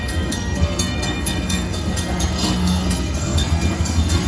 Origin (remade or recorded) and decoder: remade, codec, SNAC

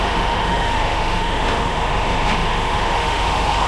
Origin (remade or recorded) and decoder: remade, autoencoder, DAC-VAE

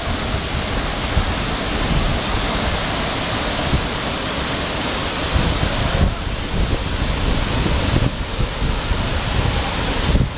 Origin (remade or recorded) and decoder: recorded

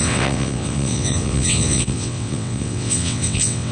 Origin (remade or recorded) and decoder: remade, vocoder, WaveNeXt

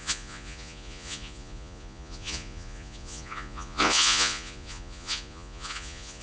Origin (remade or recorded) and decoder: remade, vocoder, Vocos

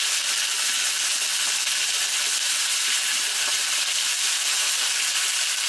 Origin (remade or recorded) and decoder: recorded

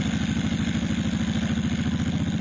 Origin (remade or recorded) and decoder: recorded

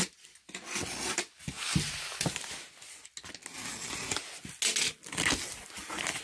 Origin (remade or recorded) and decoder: recorded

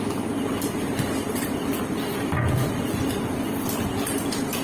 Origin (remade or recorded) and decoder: remade, vocoder, BigVGAN v2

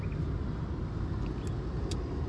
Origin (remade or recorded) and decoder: recorded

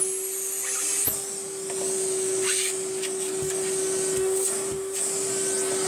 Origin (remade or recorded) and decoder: recorded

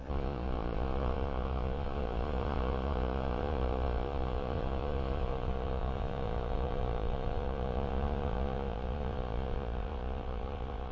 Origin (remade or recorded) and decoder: remade, vocoder, Vocos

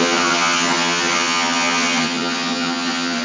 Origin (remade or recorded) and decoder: remade, vocoder, HiFi-GAN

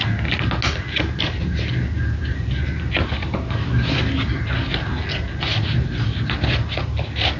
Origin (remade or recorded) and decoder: recorded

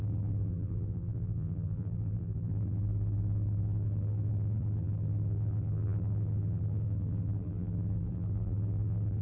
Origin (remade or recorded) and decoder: remade, vocoder, BigVGAN v2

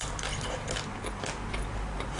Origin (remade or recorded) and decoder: recorded